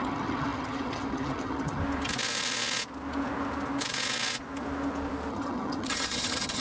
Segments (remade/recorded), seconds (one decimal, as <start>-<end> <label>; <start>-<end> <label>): 0.0-1.8 remade; 1.8-5.3 recorded; 5.3-6.6 remade